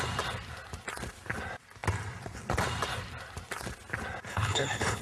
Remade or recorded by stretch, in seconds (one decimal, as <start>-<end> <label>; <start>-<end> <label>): 0.0-4.3 recorded; 4.3-5.0 remade